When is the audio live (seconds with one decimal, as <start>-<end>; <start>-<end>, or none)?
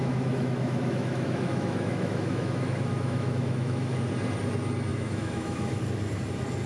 4.0-4.9; 5.8-6.7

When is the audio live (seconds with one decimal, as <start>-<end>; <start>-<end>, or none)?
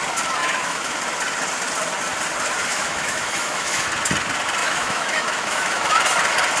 0.0-0.4; 1.0-2.7; 3.9-4.6; 6.0-6.6